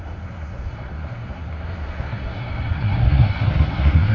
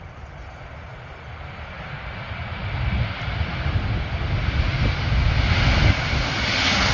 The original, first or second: second